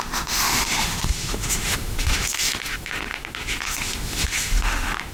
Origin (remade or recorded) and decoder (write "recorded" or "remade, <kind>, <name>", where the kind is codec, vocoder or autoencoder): remade, autoencoder, DAC-VAE